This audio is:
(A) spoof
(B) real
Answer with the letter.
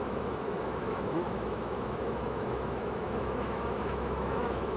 A